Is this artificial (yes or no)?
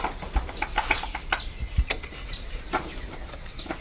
no